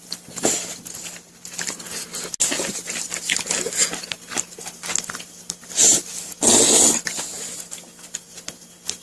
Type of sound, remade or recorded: recorded